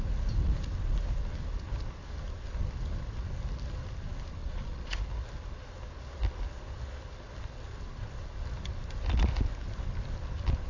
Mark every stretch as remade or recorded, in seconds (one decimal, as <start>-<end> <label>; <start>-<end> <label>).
0.0-4.4 recorded; 4.4-5.0 remade; 5.0-10.7 recorded